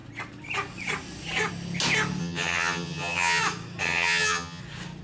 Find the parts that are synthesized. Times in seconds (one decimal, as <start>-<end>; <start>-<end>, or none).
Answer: 2.2-3.4; 3.8-4.6